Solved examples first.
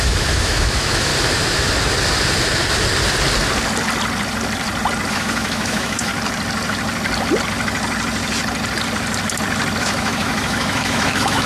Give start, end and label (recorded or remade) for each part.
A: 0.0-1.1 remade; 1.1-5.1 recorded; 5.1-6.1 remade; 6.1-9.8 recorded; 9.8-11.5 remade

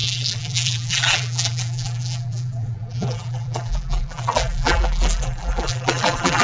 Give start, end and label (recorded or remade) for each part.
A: 0.0-6.4 remade